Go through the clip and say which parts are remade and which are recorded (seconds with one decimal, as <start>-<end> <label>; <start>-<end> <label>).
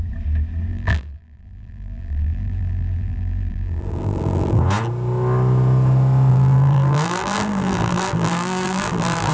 0.0-0.7 recorded; 0.7-4.6 remade; 4.6-6.3 recorded; 6.3-9.3 remade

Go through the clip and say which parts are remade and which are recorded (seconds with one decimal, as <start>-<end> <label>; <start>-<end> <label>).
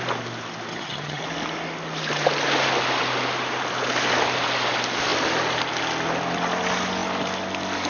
0.0-0.7 recorded; 0.7-1.2 remade; 1.2-7.9 recorded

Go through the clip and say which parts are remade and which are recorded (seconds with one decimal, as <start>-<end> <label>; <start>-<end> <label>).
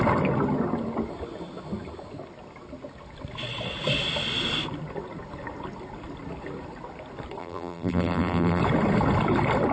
0.0-7.4 recorded; 7.4-8.6 remade; 8.6-9.7 recorded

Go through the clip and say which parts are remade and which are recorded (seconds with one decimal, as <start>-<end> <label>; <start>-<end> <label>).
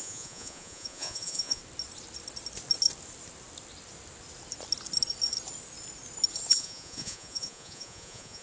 0.0-1.6 remade; 1.6-6.5 recorded; 6.5-8.4 remade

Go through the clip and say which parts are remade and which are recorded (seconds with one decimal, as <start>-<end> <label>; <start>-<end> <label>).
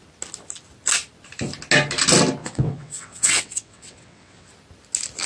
0.0-2.4 recorded; 2.4-4.5 remade; 4.5-5.3 recorded